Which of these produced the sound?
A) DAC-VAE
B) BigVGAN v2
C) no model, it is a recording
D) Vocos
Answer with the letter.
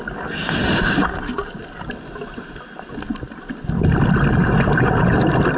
C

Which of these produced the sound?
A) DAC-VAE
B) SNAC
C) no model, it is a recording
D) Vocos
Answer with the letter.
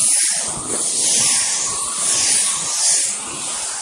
C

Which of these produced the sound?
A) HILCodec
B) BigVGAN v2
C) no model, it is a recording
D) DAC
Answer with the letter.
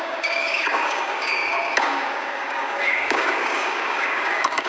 D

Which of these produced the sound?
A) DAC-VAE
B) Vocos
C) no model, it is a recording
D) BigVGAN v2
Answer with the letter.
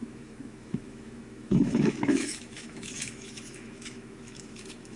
A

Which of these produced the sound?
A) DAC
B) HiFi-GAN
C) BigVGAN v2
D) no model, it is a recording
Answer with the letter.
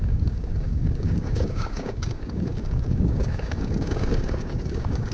A